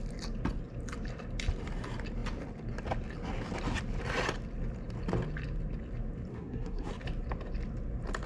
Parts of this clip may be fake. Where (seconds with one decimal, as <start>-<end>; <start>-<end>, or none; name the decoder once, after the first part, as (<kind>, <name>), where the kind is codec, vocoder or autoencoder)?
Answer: 6.3-6.9 (codec, SNAC)